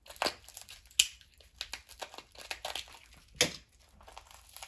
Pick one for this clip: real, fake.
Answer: real